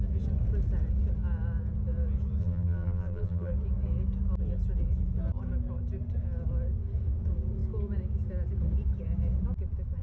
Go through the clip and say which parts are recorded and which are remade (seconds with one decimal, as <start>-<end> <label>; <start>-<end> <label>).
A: 0.0-2.4 recorded; 2.4-3.5 remade; 3.5-10.0 recorded